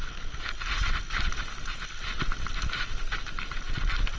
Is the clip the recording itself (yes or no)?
yes